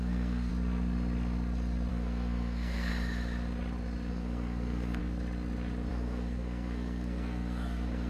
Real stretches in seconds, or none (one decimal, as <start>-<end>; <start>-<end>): 0.5-1.9; 2.9-4.1; 5.0-5.9